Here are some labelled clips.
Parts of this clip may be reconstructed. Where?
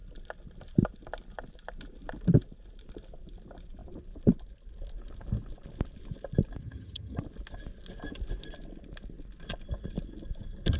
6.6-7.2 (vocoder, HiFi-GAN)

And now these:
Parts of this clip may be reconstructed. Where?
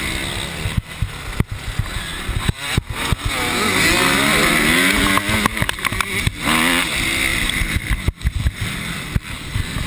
7.3-9.9 (vocoder, BigVGAN v2)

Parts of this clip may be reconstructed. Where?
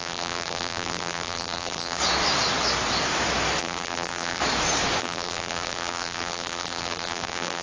0.0-2.0 (vocoder, BigVGAN v2); 3.6-4.4; 5.0-7.6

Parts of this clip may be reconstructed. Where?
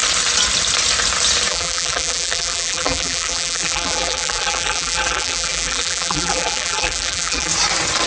1.5-7.5 (vocoder, BigVGAN v2)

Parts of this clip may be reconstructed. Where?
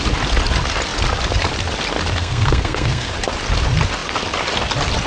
2.2-3.1 (codec, SNAC)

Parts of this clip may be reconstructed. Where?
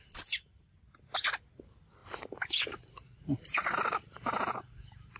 2.0-5.2 (vocoder, BigVGAN v2)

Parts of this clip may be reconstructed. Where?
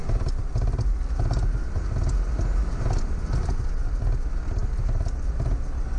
none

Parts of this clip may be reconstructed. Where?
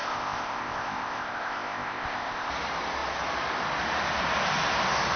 0.0-2.5 (codec, ZipCodec)